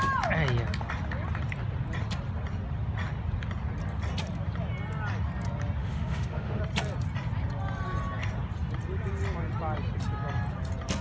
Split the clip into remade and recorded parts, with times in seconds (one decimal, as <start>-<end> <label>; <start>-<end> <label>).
0.0-5.8 recorded; 5.8-6.6 remade; 6.6-11.0 recorded